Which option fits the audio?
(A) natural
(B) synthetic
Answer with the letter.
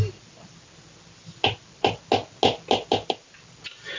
A